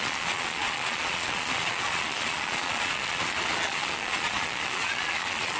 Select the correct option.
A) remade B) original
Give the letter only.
A